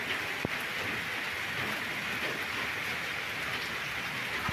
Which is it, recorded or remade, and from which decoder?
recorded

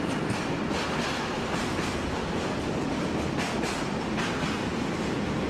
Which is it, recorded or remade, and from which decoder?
recorded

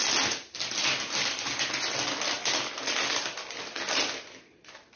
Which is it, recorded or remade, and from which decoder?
recorded